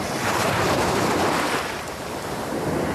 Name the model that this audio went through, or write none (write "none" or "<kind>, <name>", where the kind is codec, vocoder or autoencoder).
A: vocoder, BigVGAN v2